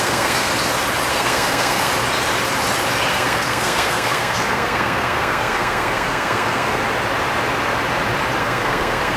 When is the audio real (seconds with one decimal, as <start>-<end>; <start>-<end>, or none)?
0.5-1.1; 1.9-3.1; 6.8-8.4